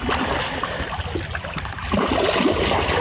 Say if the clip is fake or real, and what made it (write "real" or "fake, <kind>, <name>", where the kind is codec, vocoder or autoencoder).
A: real